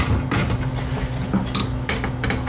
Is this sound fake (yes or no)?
no